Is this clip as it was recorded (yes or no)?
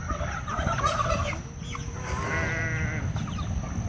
yes